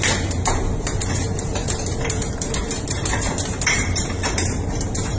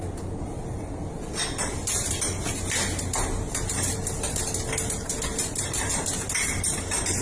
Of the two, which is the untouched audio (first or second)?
second